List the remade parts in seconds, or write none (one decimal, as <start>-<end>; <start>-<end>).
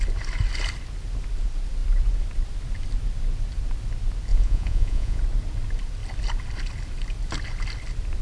4.3-5.2